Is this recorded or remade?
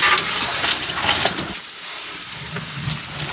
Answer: recorded